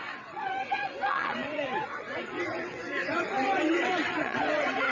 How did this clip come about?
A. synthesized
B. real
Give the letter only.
A